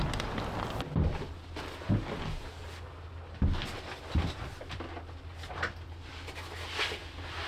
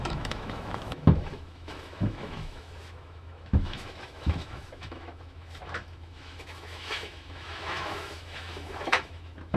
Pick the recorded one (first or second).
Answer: first